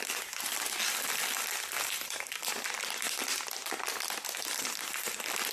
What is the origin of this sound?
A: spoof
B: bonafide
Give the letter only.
B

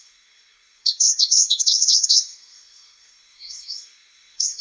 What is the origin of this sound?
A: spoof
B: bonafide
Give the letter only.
A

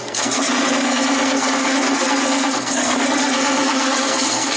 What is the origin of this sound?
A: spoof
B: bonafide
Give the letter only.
A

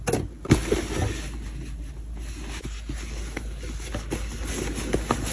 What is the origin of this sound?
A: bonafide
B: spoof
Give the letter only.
A